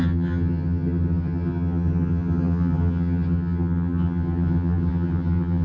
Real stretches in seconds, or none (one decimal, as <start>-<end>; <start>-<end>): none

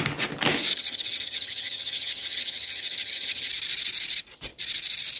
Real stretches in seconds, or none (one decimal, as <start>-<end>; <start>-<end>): 0.0-0.7; 3.5-5.2

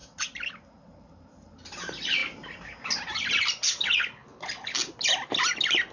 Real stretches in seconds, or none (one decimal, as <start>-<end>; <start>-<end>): 0.0-5.9

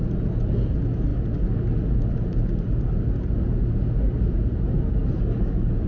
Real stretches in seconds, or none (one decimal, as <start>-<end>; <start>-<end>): 0.0-5.9

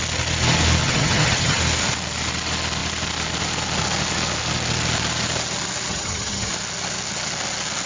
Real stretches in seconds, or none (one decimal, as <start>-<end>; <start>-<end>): 0.0-0.8; 1.6-5.9; 6.5-7.9

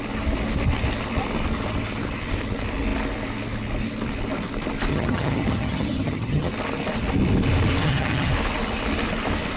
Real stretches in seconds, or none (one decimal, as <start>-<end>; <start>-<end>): 0.0-4.9; 6.5-7.8; 8.3-9.6

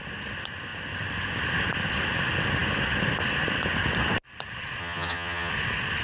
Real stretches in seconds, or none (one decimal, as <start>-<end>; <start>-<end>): 0.0-4.8; 5.5-6.0